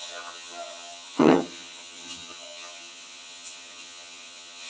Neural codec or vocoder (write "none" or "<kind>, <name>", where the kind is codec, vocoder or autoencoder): vocoder, HiFi-GAN